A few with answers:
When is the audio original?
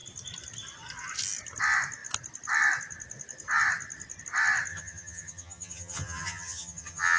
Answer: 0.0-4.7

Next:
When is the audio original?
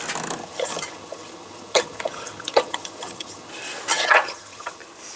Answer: 0.0-0.4; 3.5-3.9; 4.8-5.2